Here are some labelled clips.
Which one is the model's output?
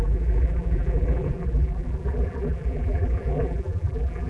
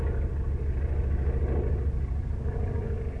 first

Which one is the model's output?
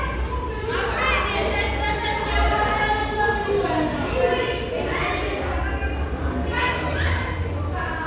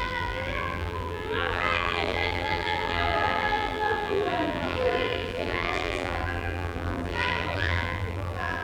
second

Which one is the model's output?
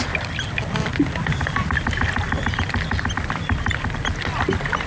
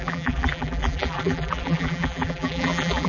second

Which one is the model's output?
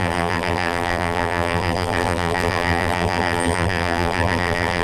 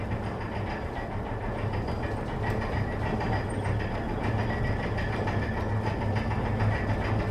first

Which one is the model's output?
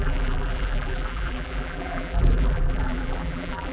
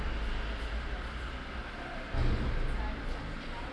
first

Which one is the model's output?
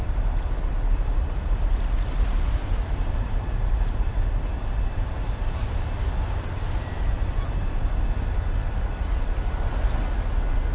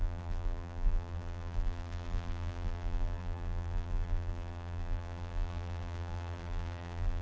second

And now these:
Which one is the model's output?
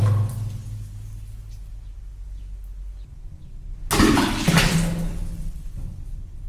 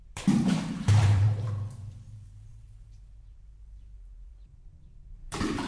second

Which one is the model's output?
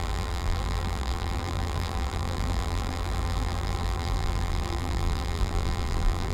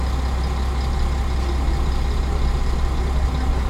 first